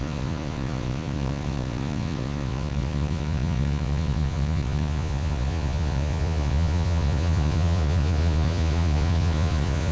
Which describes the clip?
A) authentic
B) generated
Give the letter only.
B